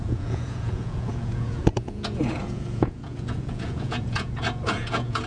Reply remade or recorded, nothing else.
remade